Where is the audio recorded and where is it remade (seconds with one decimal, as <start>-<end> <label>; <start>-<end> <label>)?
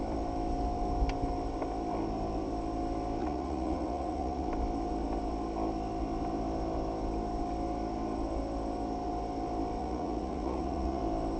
0.0-3.2 recorded; 3.2-4.5 remade; 4.5-9.8 recorded; 9.8-11.0 remade; 11.0-11.4 recorded